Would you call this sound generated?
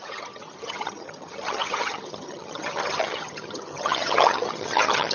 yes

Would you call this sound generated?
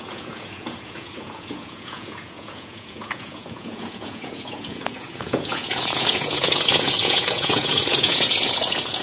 yes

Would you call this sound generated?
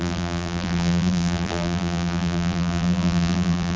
yes